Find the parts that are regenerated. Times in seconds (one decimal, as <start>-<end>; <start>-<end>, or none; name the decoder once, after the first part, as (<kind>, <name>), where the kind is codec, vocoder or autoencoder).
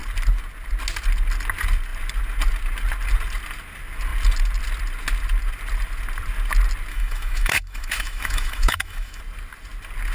6.9-9.2 (autoencoder, DAC-VAE)